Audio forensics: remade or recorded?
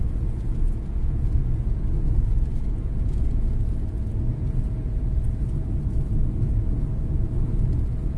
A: remade